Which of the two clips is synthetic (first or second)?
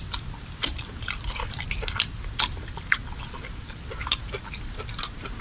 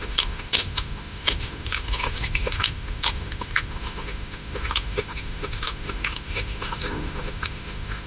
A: second